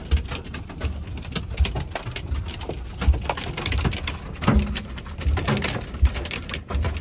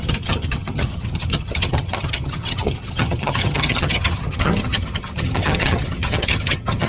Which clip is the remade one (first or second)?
second